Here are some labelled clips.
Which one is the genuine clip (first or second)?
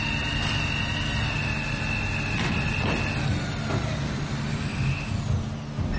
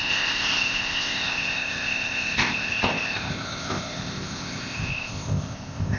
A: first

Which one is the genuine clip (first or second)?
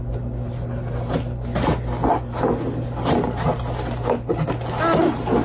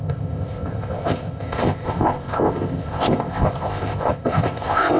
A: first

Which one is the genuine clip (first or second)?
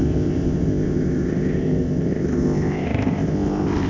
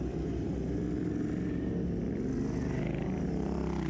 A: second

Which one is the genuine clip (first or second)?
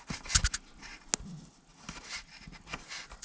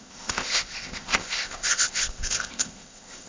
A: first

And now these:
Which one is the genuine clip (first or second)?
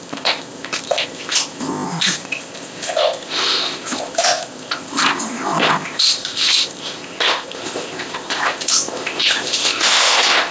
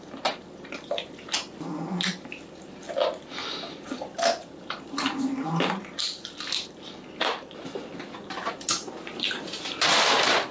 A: second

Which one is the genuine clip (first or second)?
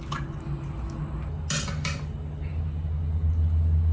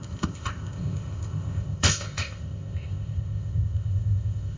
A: first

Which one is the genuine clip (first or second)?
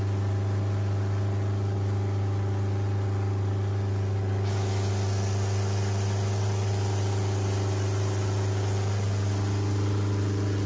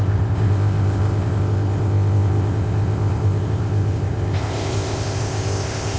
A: first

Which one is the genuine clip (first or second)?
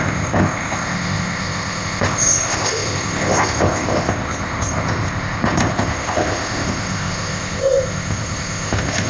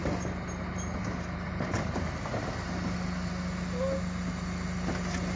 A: second